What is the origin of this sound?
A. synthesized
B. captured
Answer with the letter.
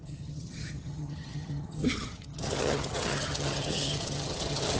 A